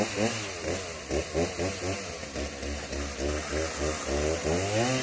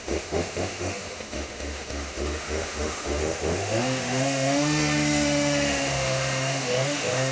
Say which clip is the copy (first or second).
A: second